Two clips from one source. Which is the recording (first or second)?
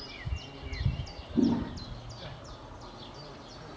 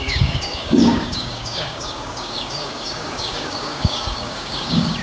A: first